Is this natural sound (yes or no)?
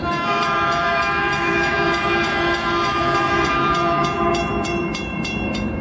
no